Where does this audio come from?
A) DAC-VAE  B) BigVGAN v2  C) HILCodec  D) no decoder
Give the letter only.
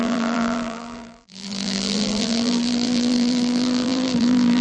B